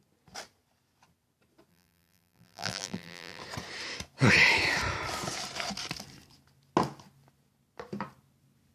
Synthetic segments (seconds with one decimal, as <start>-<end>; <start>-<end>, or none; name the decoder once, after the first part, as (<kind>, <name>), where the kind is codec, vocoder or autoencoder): 1.7-3.4 (vocoder, BigVGAN v2)